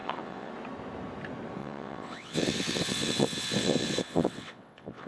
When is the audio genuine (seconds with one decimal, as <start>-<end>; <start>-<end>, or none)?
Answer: 0.5-1.6